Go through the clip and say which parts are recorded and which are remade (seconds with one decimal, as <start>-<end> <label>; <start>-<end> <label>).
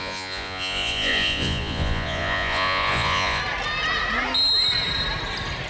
0.0-3.4 remade; 3.4-5.7 recorded